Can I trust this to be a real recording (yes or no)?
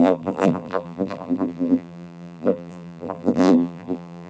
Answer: no